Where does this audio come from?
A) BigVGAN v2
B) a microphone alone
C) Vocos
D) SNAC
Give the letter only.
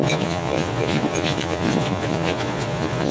C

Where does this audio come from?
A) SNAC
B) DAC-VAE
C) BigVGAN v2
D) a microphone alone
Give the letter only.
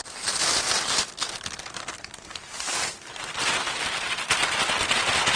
D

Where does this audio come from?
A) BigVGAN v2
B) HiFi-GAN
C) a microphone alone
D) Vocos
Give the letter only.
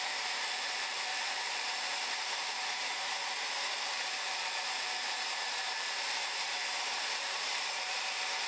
A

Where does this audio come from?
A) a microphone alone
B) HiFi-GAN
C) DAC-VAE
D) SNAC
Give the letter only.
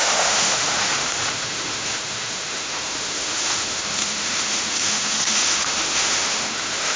C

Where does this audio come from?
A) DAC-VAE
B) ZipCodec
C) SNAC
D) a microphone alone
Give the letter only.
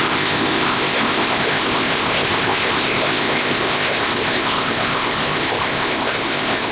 B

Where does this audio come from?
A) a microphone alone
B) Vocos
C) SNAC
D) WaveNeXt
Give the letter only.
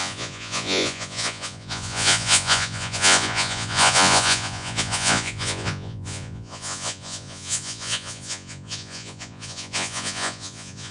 B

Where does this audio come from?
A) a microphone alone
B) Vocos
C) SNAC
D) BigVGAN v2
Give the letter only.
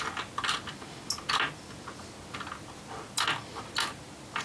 A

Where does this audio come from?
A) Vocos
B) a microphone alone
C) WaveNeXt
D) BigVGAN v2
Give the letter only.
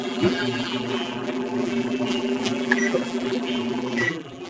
D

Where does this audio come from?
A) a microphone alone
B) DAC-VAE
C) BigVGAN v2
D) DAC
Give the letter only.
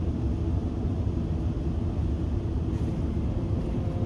A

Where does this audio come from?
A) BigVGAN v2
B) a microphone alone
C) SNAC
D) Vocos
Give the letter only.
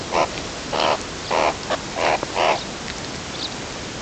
B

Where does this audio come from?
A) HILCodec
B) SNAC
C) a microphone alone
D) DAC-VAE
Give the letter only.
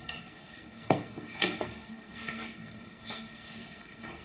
B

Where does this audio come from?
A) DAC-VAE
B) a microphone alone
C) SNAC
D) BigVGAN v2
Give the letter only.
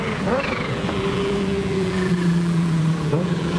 D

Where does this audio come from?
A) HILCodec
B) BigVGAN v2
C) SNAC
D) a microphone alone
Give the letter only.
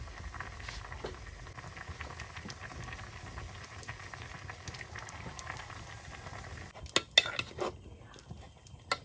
D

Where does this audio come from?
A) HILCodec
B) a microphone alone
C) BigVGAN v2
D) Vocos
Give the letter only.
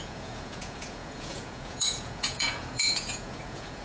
D